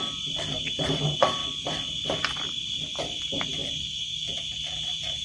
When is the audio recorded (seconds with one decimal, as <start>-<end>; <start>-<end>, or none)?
1.4-3.2; 3.6-4.5